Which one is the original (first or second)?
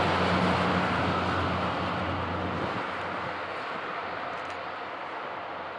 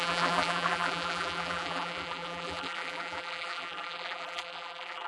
first